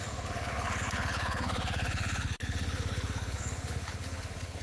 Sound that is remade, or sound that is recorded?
remade